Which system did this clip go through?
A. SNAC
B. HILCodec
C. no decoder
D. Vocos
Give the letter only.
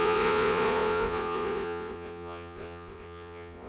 D